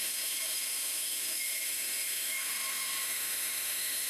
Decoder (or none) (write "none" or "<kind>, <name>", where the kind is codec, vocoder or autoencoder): autoencoder, DAC-VAE